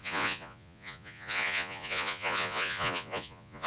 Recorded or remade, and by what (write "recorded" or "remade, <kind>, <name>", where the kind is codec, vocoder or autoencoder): remade, vocoder, Vocos